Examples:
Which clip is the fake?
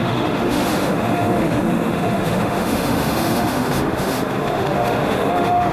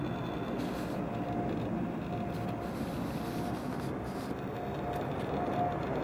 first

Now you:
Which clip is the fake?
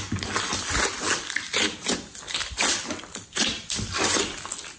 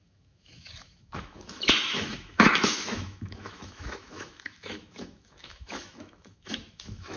second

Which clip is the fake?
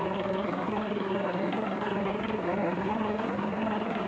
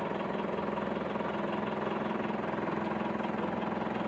first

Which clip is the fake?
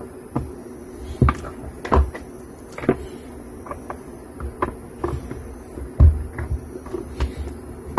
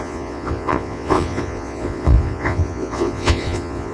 second